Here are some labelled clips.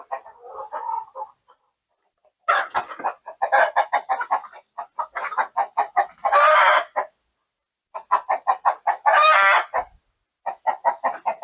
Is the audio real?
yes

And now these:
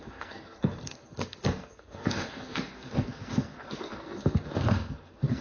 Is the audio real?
no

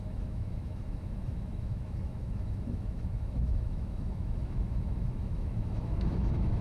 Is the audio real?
no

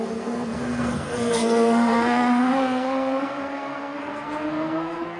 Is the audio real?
no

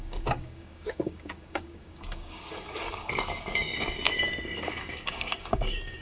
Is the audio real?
no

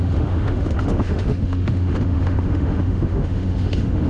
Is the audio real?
no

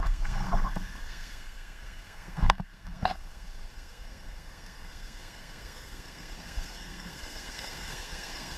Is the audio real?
no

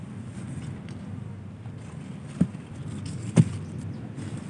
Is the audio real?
yes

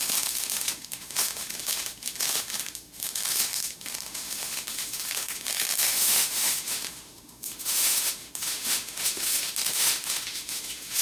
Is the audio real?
no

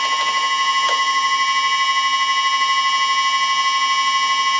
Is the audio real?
yes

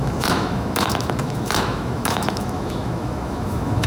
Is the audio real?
no